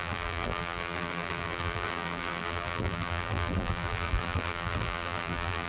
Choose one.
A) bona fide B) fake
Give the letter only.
B